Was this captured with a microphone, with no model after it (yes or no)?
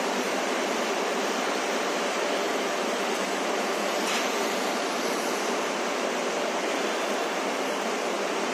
no